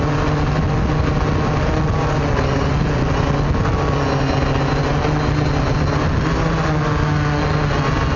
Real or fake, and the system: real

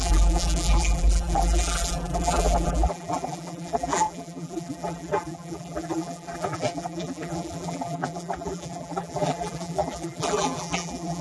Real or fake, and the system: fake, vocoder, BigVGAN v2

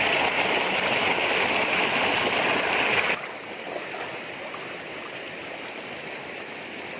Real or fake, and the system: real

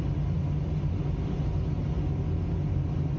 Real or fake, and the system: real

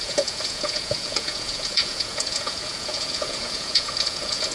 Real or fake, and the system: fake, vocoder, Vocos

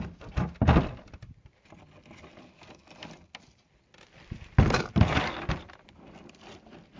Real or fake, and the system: real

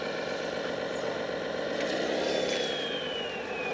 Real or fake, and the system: real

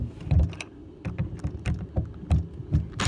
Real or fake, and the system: real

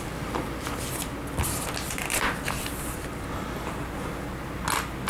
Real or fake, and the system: real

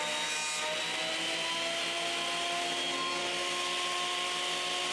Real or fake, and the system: real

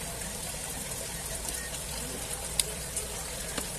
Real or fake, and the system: fake, vocoder, BigVGAN v2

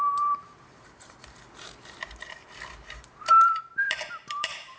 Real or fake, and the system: fake, vocoder, BigVGAN v2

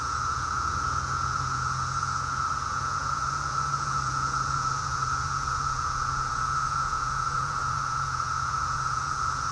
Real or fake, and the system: fake, vocoder, Vocos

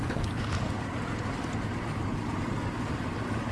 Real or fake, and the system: real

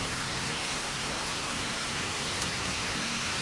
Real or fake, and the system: fake, codec, SNAC